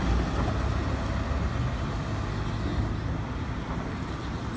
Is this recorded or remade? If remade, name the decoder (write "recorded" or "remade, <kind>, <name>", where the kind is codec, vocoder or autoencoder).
recorded